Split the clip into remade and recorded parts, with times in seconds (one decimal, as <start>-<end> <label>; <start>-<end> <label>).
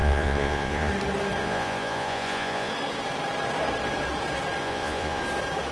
0.0-0.9 remade; 0.9-1.4 recorded; 1.4-2.7 remade; 2.7-4.6 recorded; 4.6-5.2 remade; 5.2-5.7 recorded